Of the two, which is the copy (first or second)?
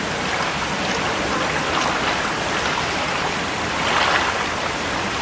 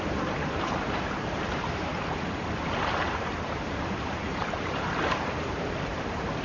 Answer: second